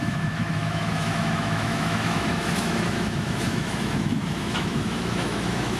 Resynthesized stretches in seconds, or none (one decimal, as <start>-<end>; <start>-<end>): 0.0-5.8